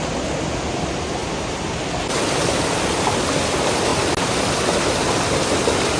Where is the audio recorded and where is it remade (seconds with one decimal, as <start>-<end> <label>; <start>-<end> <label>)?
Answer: 0.0-6.0 recorded